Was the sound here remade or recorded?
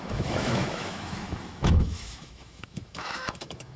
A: remade